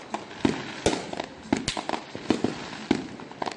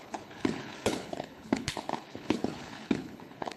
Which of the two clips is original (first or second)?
first